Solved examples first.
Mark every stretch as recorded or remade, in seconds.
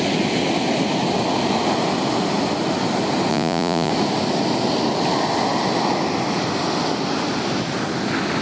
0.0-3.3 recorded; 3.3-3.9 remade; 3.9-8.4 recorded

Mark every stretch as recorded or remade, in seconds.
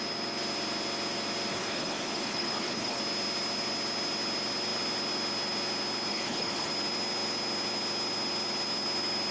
0.0-1.5 recorded; 1.5-3.0 remade; 3.0-6.1 recorded; 6.1-6.7 remade; 6.7-9.3 recorded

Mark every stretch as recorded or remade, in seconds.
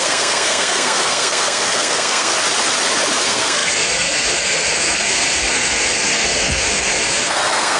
0.0-2.3 remade; 2.3-3.2 recorded; 3.2-7.8 remade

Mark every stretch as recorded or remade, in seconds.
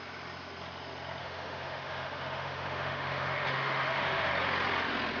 0.0-1.2 recorded; 1.2-4.3 remade; 4.3-5.2 recorded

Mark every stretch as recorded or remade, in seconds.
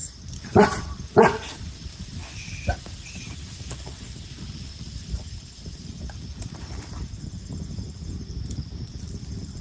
0.0-2.2 remade; 2.2-3.1 recorded; 3.1-9.6 remade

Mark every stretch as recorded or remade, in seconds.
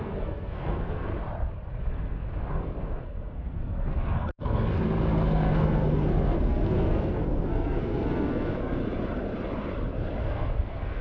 0.0-1.1 remade; 1.1-1.9 recorded; 1.9-8.8 remade; 8.8-10.2 recorded; 10.2-11.0 remade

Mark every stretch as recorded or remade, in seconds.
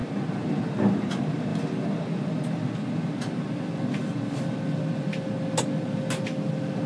0.0-6.9 recorded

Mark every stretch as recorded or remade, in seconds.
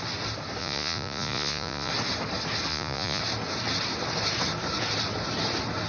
0.0-0.6 recorded; 0.6-1.9 remade; 1.9-2.7 recorded; 2.7-3.2 remade; 3.2-5.9 recorded